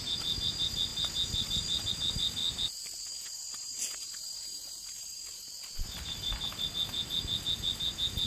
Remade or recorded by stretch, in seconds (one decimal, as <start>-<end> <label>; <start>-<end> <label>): 0.0-8.3 recorded